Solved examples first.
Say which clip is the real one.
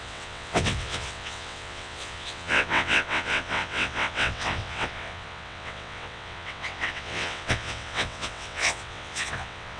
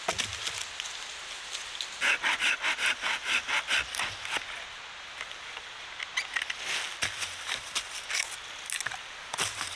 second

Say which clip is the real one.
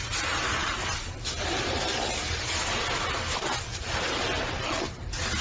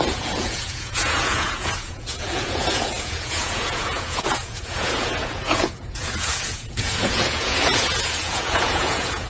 first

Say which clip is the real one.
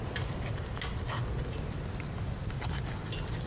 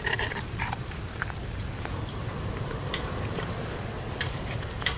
first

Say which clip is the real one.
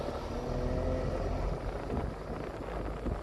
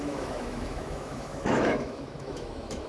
first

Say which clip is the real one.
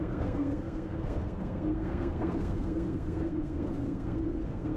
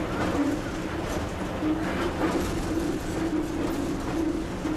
second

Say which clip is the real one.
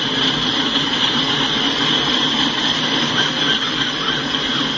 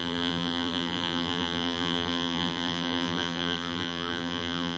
first